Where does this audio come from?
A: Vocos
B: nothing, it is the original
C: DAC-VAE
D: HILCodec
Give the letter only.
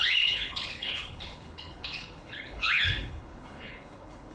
D